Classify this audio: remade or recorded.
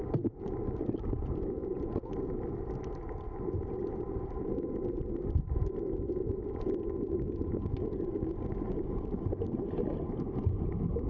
recorded